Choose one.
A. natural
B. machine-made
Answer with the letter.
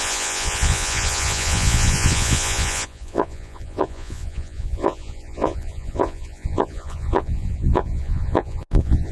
B